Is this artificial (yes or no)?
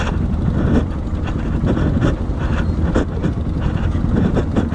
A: no